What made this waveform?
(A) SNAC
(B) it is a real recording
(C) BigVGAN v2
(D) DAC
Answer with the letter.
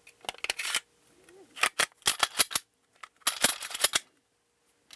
B